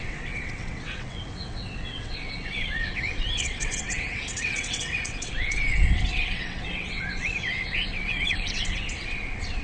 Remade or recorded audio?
remade